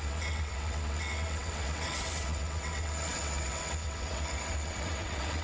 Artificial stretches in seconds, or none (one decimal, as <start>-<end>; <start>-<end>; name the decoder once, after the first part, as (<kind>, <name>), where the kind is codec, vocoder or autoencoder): 0.0-5.4 (vocoder, WaveNeXt)